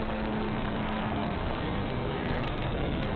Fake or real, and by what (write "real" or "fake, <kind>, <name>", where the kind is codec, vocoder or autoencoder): fake, codec, SNAC